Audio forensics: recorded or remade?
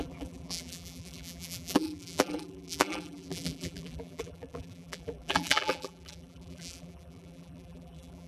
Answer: remade